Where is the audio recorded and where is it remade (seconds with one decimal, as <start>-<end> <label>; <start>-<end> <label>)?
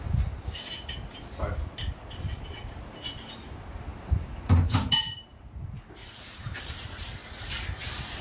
0.0-7.2 remade; 7.2-8.2 recorded